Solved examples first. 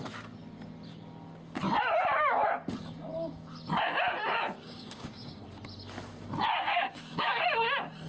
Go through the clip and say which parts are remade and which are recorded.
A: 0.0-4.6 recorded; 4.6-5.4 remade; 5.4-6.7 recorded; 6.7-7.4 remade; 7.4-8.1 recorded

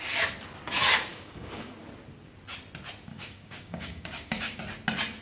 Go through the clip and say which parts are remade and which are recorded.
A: 0.0-1.1 recorded; 1.1-1.8 remade; 1.8-3.1 recorded; 3.1-4.6 remade; 4.6-5.2 recorded

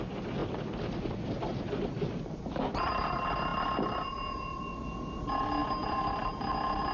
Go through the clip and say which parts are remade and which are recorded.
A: 0.0-6.9 recorded

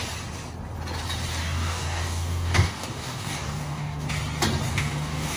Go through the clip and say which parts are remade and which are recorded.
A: 0.0-1.4 recorded; 1.4-4.1 remade; 4.1-4.7 recorded; 4.7-5.4 remade